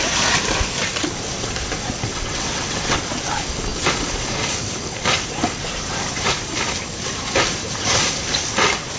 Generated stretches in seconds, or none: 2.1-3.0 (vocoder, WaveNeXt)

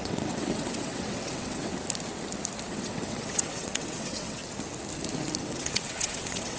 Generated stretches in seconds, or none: 0.0-1.7 (vocoder, WaveNeXt); 2.7-4.4; 5.4-6.6

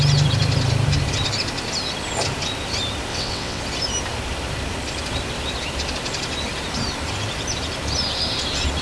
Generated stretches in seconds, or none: 3.1-3.6 (vocoder, WaveNeXt)

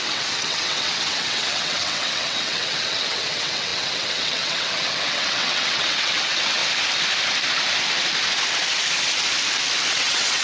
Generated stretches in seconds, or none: 0.0-6.6 (vocoder, WaveNeXt); 9.9-10.4